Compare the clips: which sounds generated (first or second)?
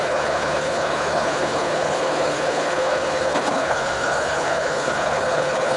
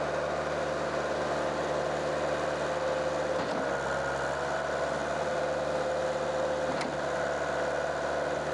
first